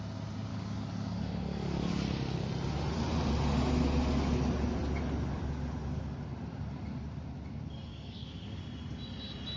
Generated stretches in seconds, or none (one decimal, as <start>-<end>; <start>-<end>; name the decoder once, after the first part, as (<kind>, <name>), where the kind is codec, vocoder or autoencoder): 0.5-1.9 (codec, DAC); 7.9-8.6